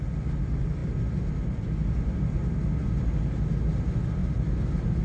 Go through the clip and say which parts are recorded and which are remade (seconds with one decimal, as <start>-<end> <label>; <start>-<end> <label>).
0.0-5.0 recorded